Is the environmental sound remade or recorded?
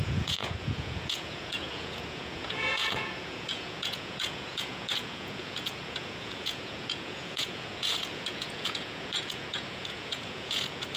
remade